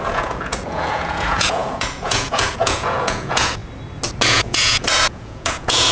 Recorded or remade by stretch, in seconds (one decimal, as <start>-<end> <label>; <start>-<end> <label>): 0.0-3.6 remade; 3.6-4.3 recorded; 4.3-5.9 remade